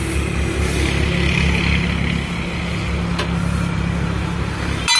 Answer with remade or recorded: recorded